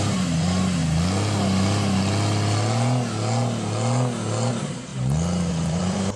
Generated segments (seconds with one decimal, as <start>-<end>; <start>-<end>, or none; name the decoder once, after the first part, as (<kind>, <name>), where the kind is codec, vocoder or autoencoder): 0.0-0.8 (vocoder, BigVGAN v2); 4.5-4.9; 5.5-6.2